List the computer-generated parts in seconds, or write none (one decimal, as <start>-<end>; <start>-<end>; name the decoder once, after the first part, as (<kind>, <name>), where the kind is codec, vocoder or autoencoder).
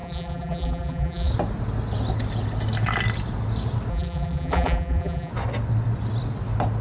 0.0-1.3 (vocoder, BigVGAN v2); 3.9-5.3